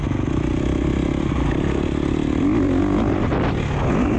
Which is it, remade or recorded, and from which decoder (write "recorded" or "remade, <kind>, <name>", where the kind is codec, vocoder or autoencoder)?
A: recorded